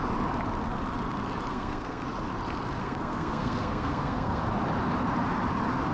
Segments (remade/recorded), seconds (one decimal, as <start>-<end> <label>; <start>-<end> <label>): 0.0-1.5 recorded; 1.5-2.0 remade; 2.0-2.8 recorded; 2.8-4.4 remade; 4.4-5.9 recorded